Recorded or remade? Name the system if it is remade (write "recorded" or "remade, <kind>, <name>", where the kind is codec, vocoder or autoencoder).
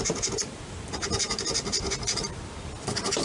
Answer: recorded